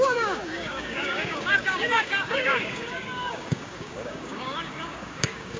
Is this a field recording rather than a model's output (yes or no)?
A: no